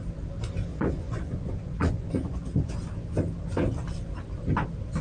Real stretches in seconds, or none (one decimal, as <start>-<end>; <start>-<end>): 0.0-0.7; 2.7-5.0